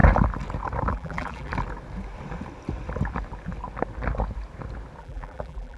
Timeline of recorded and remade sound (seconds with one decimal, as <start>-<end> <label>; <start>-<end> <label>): 0.0-0.9 recorded; 0.9-1.5 remade; 1.5-5.0 recorded; 5.0-5.8 remade